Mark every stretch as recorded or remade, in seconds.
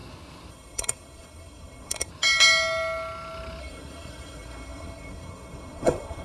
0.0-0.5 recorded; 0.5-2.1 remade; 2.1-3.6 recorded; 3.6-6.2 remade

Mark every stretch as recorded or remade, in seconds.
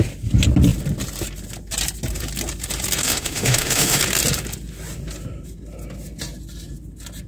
0.0-3.0 recorded; 3.0-4.0 remade; 4.0-7.3 recorded